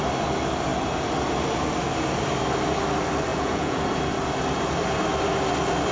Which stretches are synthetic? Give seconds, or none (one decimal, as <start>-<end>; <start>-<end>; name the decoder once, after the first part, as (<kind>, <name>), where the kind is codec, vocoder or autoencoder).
3.3-3.8 (vocoder, Vocos)